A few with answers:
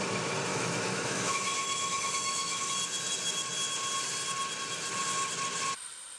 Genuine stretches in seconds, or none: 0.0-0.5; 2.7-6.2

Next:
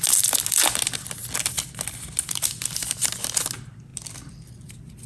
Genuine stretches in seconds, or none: 0.0-5.1

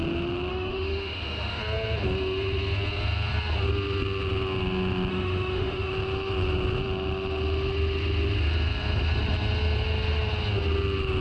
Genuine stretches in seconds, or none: 0.0-0.5; 1.6-5.1; 5.9-11.2

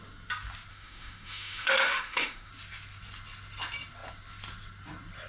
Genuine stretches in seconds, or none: 0.0-0.7; 2.5-5.3

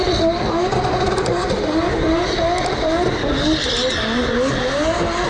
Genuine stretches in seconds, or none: 0.0-5.3